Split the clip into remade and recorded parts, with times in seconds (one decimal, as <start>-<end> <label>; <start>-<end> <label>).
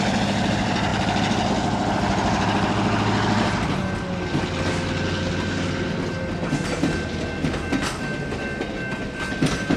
0.0-9.8 recorded